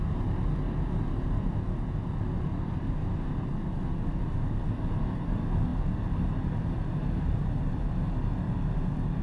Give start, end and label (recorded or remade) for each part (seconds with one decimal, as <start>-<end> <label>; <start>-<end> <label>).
0.0-9.2 recorded